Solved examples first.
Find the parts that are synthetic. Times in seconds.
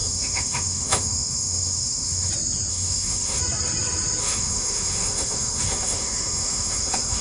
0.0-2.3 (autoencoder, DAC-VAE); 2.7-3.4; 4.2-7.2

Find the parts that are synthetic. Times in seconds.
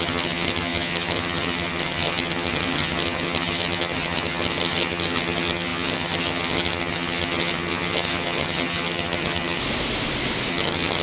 0.0-9.6 (vocoder, HiFi-GAN); 10.5-11.0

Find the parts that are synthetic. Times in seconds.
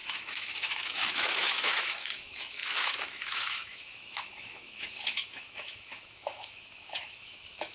0.0-7.7 (autoencoder, DAC-VAE)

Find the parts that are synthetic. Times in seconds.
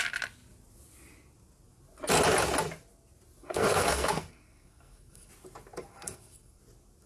3.4-5.3 (codec, SNAC); 5.9-6.6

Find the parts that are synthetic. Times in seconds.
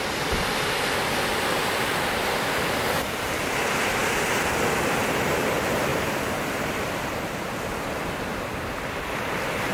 1.3-1.9 (vocoder, BigVGAN v2); 5.9-6.8